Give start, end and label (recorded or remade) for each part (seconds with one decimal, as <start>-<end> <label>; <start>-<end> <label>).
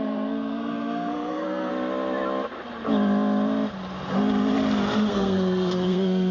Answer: 0.0-1.7 remade; 1.7-5.1 recorded; 5.1-6.3 remade